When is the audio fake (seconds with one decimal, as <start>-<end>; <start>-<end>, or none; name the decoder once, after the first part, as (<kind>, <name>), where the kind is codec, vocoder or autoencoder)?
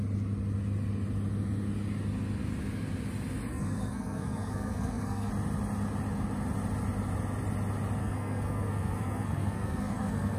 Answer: 3.5-5.3 (codec, SNAC); 8.0-10.4